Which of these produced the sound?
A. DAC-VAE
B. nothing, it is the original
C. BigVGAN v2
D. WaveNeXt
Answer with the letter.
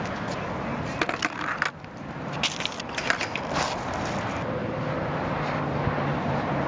B